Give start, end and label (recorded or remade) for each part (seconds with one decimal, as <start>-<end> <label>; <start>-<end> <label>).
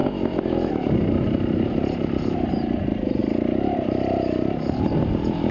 0.0-0.7 remade; 0.7-5.5 recorded